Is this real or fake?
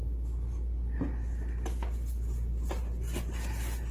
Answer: real